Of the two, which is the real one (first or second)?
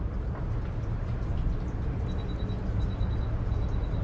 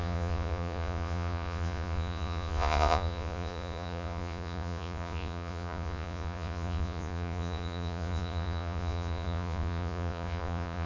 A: first